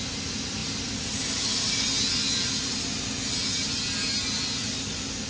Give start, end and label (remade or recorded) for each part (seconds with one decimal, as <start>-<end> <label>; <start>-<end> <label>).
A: 0.0-5.3 recorded